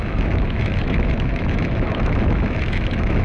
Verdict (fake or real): fake